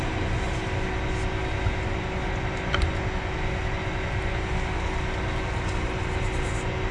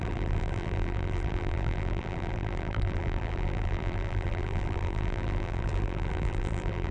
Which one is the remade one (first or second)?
second